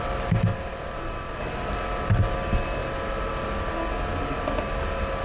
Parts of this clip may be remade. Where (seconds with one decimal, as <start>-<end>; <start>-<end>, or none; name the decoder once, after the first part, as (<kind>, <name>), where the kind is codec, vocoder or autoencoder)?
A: 0.5-1.4 (vocoder, BigVGAN v2)